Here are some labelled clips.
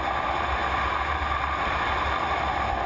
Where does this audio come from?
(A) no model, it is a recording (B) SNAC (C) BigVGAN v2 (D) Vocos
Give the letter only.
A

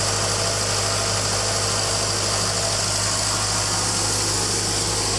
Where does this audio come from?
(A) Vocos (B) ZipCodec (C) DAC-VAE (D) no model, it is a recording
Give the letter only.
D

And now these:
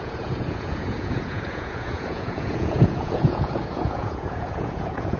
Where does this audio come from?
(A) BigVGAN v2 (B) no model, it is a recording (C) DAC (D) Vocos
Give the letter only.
D